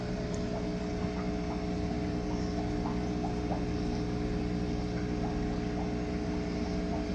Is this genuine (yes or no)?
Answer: yes